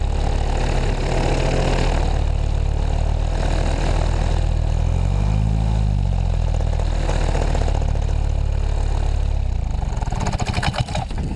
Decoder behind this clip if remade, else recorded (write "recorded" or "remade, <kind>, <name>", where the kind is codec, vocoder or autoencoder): recorded